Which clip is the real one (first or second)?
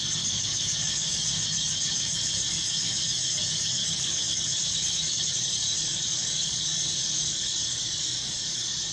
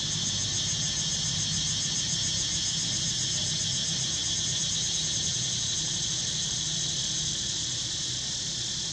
second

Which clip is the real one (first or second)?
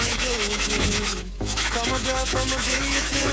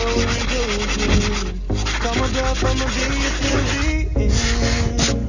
second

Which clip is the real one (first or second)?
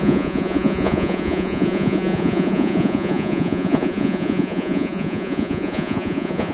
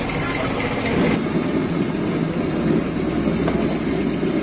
second